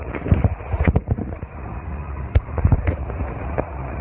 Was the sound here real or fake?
fake